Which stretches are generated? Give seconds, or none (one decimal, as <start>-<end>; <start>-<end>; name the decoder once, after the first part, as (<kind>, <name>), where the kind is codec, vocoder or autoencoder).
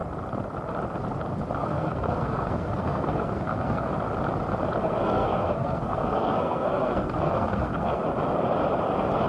1.6-3.9 (codec, SNAC); 4.8-8.0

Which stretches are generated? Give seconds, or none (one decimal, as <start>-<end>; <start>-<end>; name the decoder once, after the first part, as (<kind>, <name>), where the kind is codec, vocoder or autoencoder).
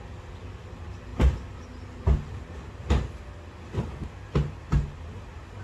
none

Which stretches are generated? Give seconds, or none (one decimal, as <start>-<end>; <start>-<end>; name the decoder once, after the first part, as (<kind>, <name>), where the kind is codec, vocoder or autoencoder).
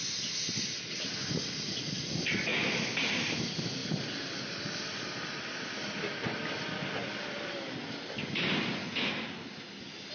none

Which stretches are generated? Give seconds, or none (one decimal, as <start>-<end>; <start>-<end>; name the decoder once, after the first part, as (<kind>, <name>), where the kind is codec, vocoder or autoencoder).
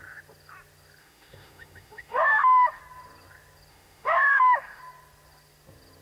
1.0-2.8 (autoencoder, DAC-VAE); 3.7-4.8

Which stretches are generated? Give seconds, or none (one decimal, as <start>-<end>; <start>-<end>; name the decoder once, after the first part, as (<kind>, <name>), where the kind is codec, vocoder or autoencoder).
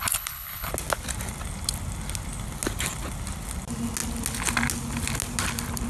0.0-0.7 (codec, HILCodec)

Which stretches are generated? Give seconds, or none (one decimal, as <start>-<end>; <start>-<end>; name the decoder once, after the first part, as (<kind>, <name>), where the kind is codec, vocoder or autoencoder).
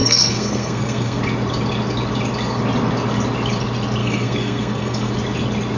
0.0-1.2 (codec, SNAC); 4.0-5.1